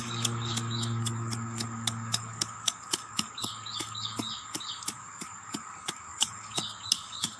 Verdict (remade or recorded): remade